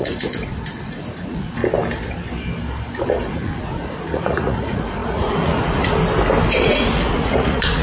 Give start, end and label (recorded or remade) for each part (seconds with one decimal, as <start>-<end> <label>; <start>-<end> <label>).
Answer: 0.0-1.6 remade; 1.6-3.0 recorded; 3.0-6.0 remade; 6.0-6.6 recorded; 6.6-7.8 remade